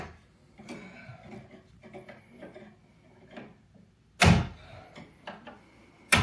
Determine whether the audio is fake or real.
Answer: real